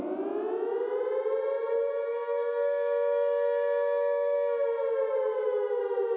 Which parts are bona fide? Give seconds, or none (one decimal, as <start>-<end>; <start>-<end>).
0.0-2.1; 5.8-6.2